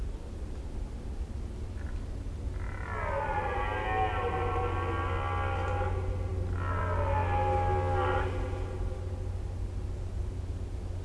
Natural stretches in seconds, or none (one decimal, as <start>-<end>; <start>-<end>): 0.0-11.0